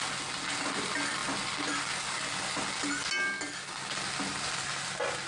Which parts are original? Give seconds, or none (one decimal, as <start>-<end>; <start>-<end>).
0.0-5.3